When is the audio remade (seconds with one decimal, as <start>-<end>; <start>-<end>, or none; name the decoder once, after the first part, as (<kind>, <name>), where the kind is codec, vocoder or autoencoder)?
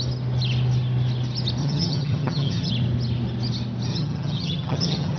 1.6-2.7 (vocoder, HiFi-GAN); 3.9-5.2